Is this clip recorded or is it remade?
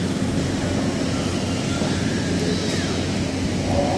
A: recorded